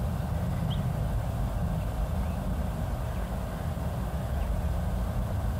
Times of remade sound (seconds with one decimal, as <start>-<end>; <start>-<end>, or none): none